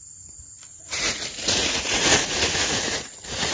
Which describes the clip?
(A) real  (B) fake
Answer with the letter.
B